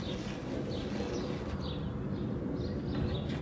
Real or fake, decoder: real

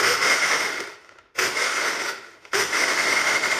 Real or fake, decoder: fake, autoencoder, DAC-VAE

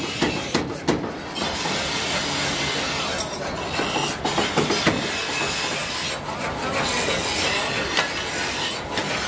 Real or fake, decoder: real